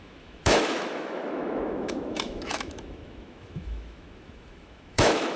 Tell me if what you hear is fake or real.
fake